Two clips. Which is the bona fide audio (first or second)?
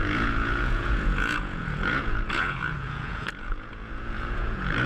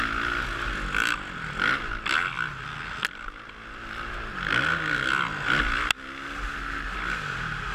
second